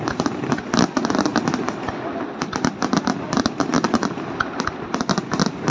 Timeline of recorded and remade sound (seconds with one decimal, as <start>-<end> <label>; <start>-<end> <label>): 0.0-3.7 recorded; 3.7-4.7 remade; 4.7-5.7 recorded